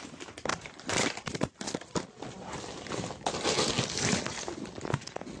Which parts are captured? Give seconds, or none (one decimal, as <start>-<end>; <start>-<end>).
0.0-0.5; 2.6-5.4